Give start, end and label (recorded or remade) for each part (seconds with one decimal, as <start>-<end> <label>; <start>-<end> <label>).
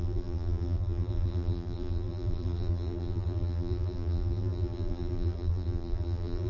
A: 0.0-6.5 remade